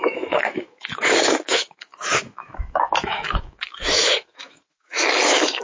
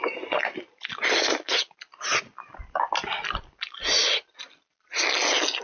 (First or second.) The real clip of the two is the second